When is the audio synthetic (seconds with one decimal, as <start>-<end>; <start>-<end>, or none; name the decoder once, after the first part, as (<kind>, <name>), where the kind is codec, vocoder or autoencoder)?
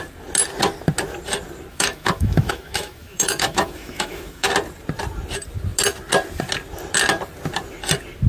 1.7-4.5 (autoencoder, DAC-VAE)